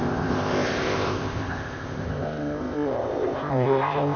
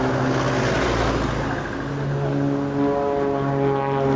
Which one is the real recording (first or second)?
second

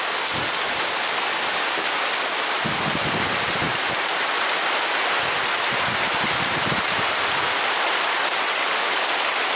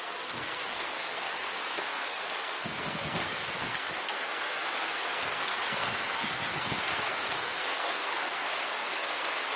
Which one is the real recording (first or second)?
first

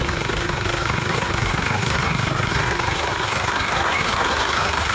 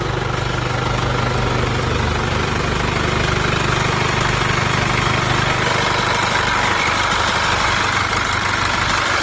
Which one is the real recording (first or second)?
second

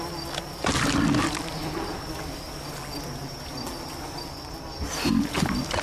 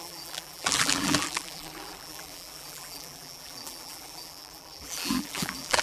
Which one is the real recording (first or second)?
first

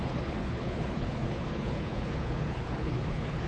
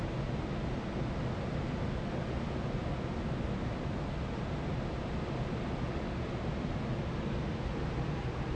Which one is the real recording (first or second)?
second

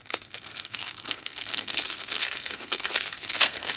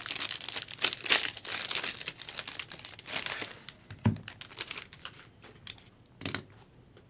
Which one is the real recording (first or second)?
second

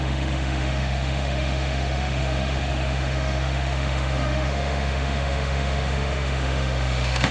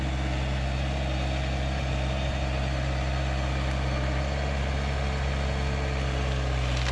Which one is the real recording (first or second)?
second